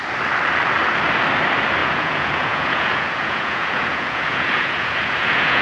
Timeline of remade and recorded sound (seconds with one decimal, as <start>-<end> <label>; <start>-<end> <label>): 0.0-1.8 recorded; 1.8-5.6 remade